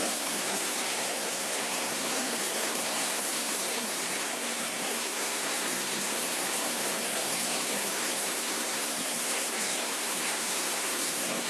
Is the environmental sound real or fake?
fake